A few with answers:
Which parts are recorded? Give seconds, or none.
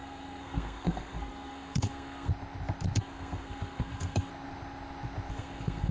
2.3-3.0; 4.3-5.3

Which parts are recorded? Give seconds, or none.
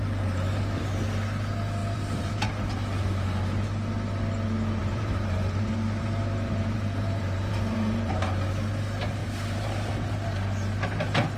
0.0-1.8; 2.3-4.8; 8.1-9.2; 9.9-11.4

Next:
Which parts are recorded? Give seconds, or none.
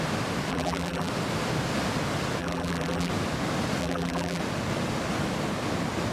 0.0-0.5; 1.1-2.4; 3.1-3.8; 4.4-6.1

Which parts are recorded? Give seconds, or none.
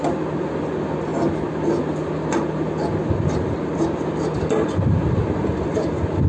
0.0-6.3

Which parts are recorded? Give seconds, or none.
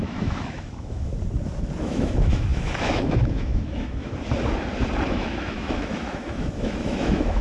1.1-1.8; 4.1-5.1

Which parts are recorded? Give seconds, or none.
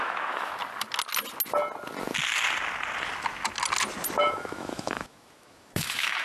0.5-4.2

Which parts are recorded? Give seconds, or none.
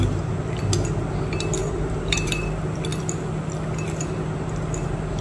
0.0-1.6; 2.3-5.2